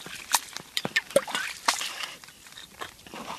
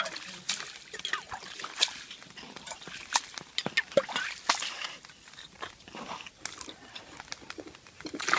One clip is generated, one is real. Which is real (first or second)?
second